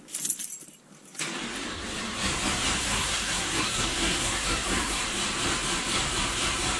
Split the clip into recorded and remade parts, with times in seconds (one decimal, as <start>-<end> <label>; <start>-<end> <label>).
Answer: 0.0-2.8 recorded; 2.8-5.0 remade; 5.0-6.8 recorded